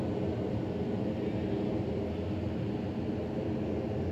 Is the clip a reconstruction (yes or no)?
no